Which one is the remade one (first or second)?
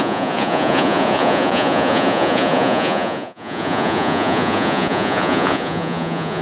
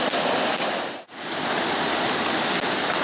first